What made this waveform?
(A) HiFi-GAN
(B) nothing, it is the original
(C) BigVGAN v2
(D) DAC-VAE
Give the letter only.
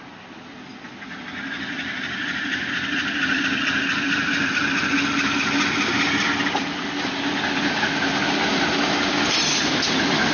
B